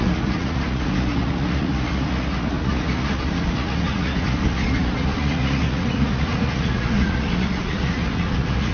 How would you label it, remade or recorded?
remade